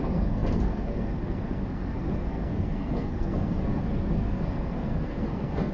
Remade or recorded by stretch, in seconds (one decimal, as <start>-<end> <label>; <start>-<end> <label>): 0.0-5.7 remade

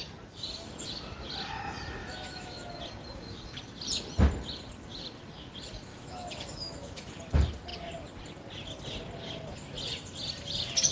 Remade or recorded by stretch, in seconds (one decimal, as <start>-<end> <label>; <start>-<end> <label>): 0.0-2.0 recorded; 2.0-2.8 remade; 2.8-5.9 recorded; 5.9-7.2 remade; 7.2-10.9 recorded

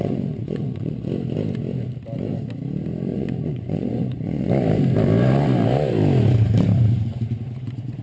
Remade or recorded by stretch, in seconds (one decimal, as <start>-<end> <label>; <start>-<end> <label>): 0.0-1.1 remade; 1.1-3.1 recorded; 3.1-4.5 remade; 4.5-8.0 recorded